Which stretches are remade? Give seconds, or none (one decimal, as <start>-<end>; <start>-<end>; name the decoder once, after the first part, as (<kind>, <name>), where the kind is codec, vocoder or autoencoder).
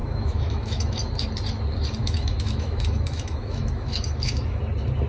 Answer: 0.0-1.0 (autoencoder, DAC-VAE); 2.0-4.6